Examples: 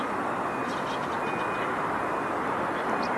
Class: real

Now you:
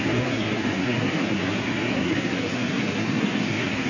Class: fake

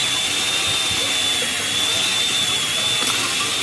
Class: real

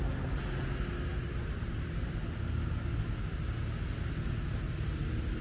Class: real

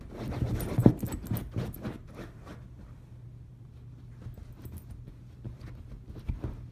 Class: real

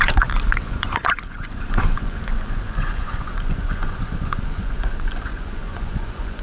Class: fake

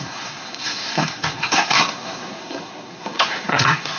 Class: fake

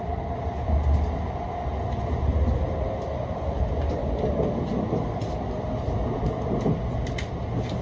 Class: real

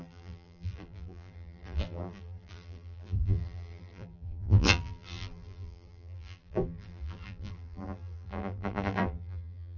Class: fake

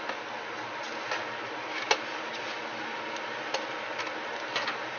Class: real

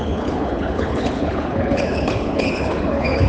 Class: fake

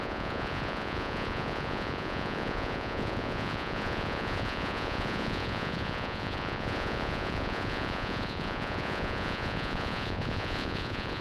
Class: fake